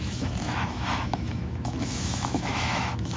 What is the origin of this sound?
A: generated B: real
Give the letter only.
A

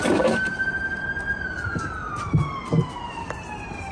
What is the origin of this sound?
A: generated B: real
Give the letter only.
B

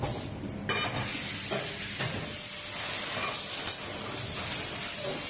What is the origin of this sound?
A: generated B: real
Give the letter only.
B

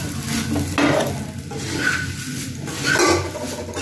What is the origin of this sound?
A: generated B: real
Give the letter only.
B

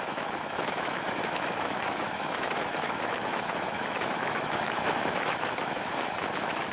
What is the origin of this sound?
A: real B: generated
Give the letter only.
B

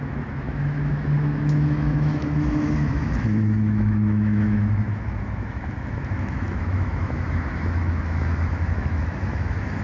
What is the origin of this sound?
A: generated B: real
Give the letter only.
A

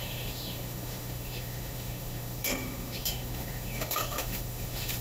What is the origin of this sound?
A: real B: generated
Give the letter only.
B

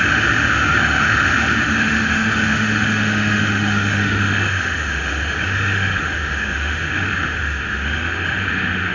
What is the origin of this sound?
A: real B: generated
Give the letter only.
B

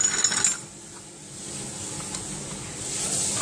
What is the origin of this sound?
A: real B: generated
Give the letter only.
A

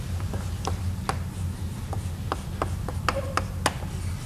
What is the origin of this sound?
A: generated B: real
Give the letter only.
B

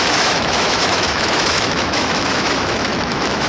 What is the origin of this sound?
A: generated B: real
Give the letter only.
A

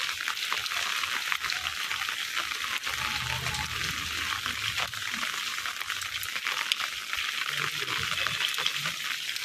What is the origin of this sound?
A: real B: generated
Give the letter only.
A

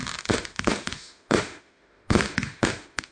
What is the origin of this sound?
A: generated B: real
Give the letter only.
A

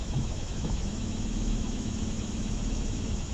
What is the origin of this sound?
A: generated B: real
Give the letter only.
A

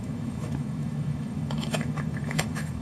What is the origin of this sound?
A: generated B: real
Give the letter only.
A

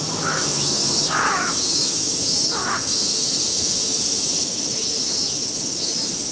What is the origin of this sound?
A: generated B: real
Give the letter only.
A